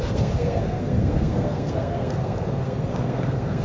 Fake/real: fake